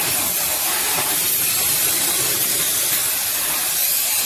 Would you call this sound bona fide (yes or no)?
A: yes